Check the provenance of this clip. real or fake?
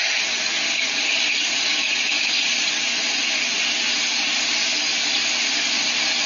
real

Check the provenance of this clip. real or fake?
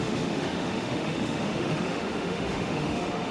fake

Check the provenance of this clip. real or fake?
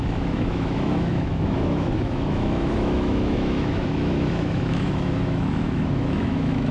fake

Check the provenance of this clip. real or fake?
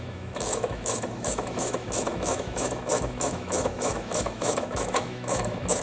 fake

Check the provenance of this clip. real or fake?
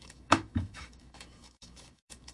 fake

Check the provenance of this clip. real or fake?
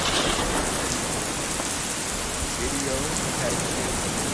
real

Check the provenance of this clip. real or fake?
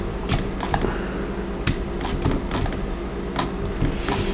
real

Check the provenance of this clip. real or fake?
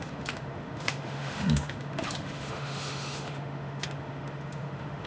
fake